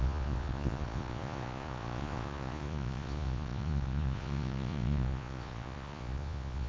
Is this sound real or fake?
fake